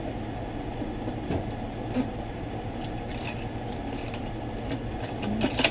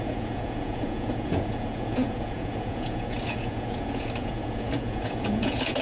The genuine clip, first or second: first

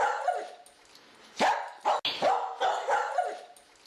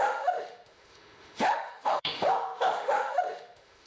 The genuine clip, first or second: first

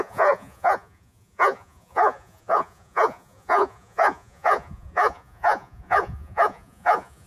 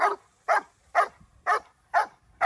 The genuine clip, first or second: second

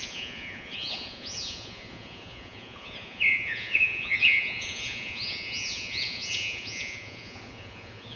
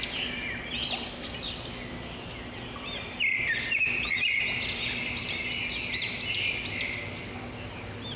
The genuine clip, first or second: second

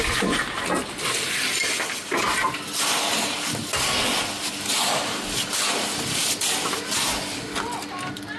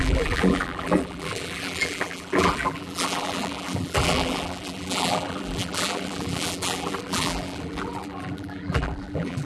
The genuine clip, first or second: first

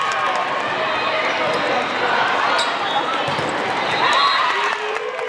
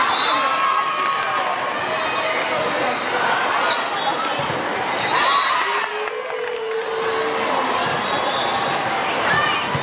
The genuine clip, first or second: second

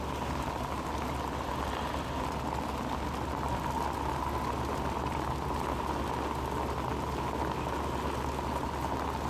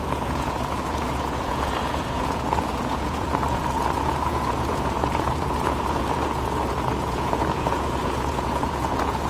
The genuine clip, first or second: first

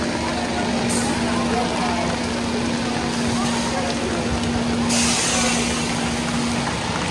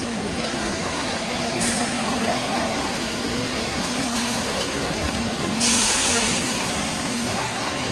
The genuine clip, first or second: first